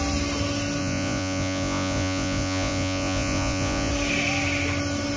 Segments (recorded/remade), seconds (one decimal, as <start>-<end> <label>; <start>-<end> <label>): 0.0-0.8 recorded; 0.8-3.9 remade; 3.9-5.2 recorded